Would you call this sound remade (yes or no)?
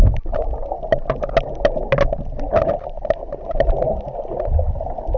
no